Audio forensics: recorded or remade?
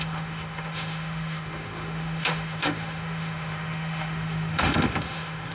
remade